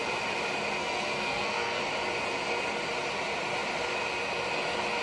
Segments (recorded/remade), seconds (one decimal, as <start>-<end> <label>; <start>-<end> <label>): 0.0-0.8 recorded; 0.8-1.8 remade; 1.8-5.0 recorded